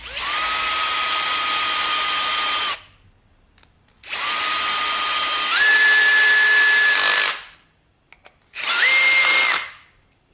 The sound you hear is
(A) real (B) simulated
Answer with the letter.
A